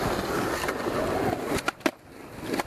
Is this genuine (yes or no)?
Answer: yes